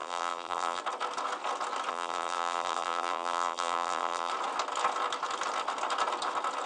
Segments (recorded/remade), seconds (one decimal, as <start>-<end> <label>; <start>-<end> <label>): 0.0-0.8 remade; 0.8-1.9 recorded; 1.9-4.3 remade; 4.3-6.7 recorded